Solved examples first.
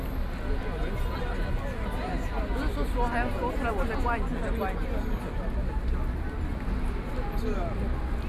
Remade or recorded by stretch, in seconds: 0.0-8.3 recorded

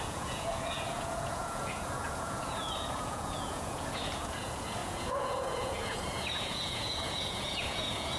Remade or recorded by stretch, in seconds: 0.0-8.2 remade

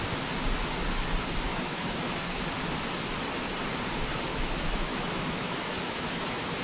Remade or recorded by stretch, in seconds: 0.0-1.5 recorded; 1.5-2.4 remade; 2.4-4.3 recorded; 4.3-6.6 remade

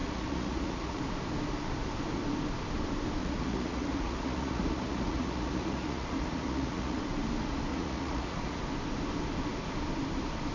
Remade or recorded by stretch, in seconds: 0.0-1.0 remade; 1.0-3.2 recorded; 3.2-7.0 remade; 7.0-7.7 recorded; 7.7-8.6 remade; 8.6-10.5 recorded

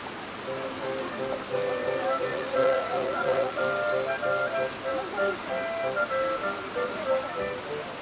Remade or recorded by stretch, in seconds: 0.0-2.3 recorded; 2.3-3.6 remade; 3.6-8.0 recorded

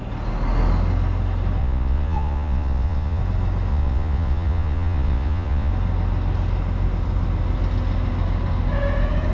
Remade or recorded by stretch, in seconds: 0.0-1.6 recorded; 1.6-3.2 remade; 3.2-3.7 recorded; 3.7-5.7 remade; 5.7-9.3 recorded

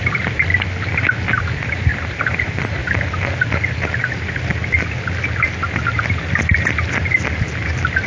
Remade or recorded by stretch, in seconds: 0.0-0.5 remade; 0.5-1.4 recorded; 1.4-2.8 remade; 2.8-8.1 recorded

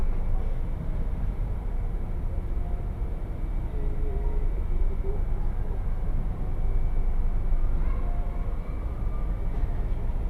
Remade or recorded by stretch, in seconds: 0.0-10.3 recorded